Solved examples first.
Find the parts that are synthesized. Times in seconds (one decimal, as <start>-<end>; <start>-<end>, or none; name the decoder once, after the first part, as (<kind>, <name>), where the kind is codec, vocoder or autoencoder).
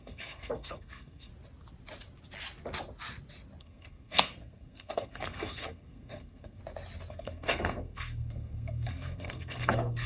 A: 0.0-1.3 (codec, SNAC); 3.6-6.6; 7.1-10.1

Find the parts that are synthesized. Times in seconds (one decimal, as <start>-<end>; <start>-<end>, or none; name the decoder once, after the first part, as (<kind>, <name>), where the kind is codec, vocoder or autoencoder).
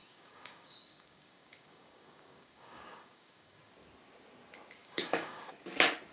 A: 0.0-3.7 (codec, DAC); 4.8-5.5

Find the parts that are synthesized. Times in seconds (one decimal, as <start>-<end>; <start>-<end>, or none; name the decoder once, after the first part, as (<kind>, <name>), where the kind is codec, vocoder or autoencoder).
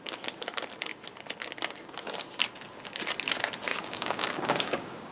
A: 3.7-5.1 (codec, DAC)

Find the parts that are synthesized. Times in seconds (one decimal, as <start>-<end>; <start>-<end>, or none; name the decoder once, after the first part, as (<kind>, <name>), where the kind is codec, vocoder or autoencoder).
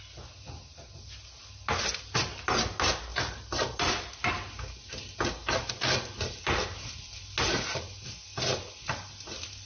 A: none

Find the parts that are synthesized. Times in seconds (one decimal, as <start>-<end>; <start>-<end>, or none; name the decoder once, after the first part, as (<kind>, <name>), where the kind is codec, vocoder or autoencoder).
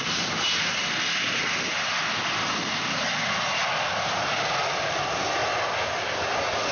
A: none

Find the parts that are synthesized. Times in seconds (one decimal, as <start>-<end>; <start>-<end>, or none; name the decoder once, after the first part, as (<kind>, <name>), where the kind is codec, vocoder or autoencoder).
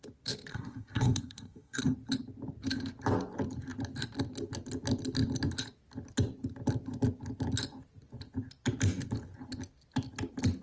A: 0.5-1.8 (codec, SNAC)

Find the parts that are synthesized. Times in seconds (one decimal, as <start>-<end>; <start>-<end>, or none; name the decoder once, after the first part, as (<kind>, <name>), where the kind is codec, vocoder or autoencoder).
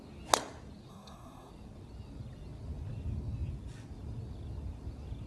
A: 0.9-1.5 (codec, SNAC)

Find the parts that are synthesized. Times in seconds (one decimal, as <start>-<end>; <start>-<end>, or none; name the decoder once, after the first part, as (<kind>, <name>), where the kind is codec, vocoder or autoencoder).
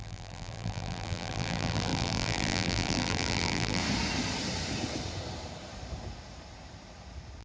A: 0.0-3.8 (vocoder, BigVGAN v2)